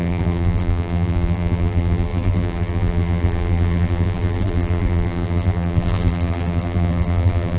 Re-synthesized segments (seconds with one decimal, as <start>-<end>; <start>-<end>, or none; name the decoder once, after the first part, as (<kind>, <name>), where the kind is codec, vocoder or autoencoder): 0.0-7.6 (vocoder, BigVGAN v2)